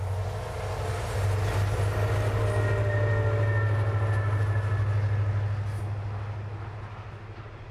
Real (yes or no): yes